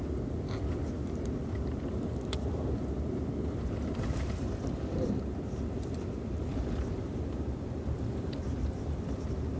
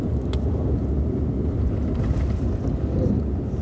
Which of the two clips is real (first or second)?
second